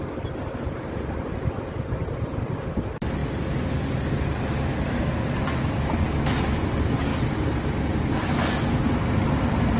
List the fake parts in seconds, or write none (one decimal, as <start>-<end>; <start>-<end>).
none